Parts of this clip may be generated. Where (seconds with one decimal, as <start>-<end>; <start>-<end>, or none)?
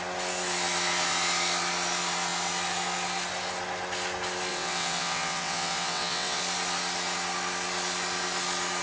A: 4.5-6.4